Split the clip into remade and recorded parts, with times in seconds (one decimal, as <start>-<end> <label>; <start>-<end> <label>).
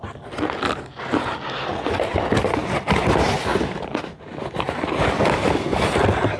0.0-6.4 recorded